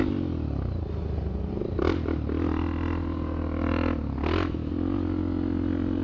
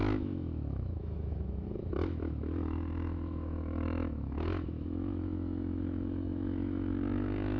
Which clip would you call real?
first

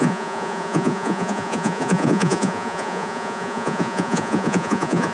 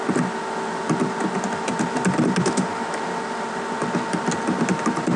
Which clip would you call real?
second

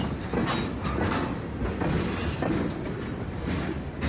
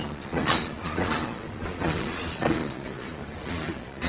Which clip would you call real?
first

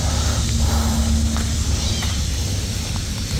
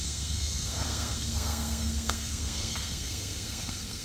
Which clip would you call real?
first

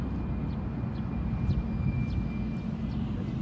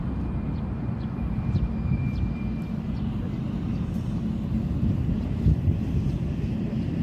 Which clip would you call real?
first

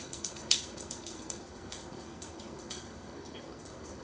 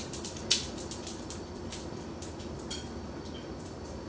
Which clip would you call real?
second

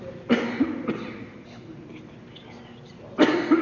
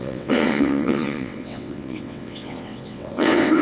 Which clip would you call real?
first